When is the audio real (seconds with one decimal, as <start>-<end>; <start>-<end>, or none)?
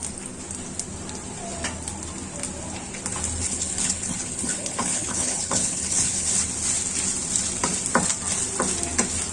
0.0-3.4; 6.4-9.3